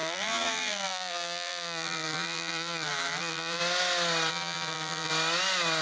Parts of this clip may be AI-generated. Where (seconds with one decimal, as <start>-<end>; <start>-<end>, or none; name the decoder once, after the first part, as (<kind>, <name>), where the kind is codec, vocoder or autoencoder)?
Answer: 0.0-3.6 (vocoder, BigVGAN v2); 4.3-5.1